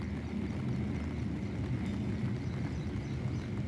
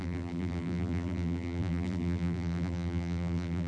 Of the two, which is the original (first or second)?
first